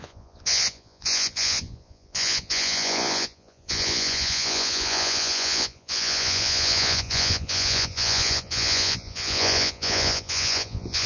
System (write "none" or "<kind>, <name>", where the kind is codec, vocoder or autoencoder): vocoder, Vocos